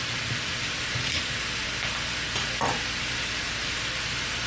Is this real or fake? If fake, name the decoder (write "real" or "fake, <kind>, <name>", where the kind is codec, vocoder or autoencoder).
real